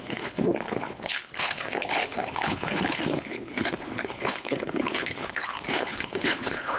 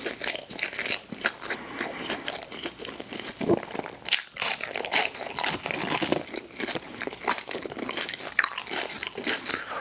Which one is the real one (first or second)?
second